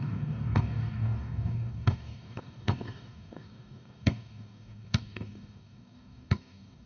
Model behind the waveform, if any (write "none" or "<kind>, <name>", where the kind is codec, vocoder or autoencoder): codec, DAC